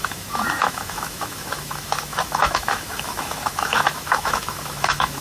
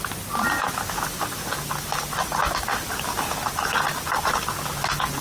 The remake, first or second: first